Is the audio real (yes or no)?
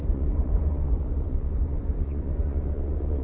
no